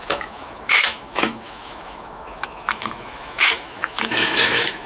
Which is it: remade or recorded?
remade